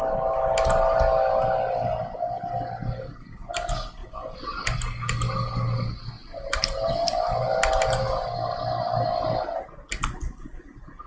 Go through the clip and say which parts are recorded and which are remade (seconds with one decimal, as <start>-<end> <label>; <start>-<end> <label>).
0.0-7.4 recorded; 7.4-8.0 remade; 8.0-11.1 recorded